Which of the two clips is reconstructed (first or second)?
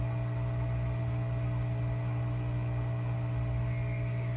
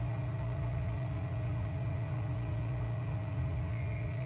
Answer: second